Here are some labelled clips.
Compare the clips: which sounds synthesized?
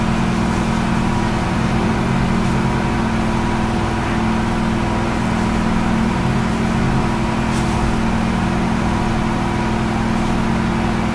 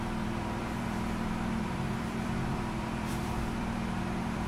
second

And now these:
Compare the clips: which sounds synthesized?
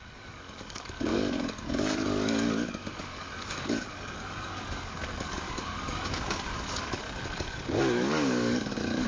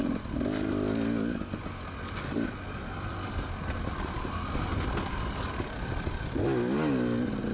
first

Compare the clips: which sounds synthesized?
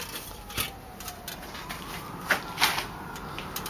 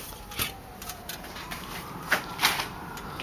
second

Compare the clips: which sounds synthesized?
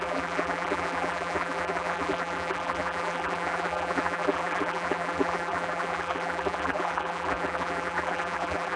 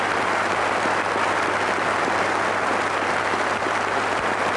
first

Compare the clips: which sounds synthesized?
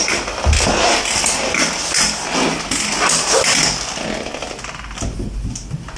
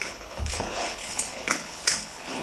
second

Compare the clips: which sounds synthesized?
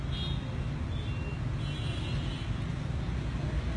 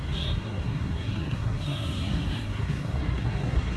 second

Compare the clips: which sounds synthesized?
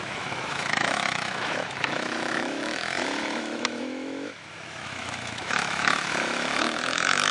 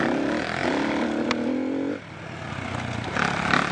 first